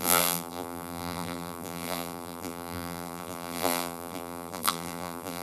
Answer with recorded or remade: remade